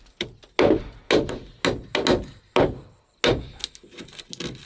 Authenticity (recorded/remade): recorded